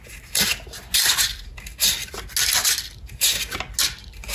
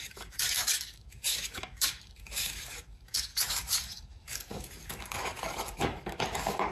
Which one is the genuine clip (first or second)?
first